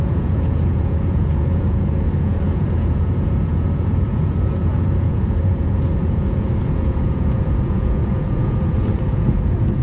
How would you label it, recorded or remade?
remade